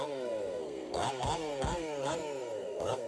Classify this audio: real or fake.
fake